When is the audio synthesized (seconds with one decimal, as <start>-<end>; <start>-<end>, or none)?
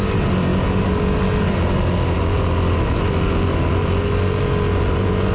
none